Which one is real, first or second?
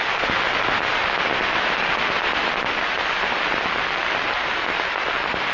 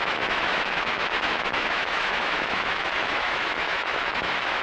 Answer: first